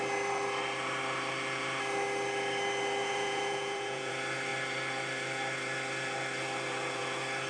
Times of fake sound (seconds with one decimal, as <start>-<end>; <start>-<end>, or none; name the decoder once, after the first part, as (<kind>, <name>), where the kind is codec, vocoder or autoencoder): 3.0-4.1 (vocoder, Vocos)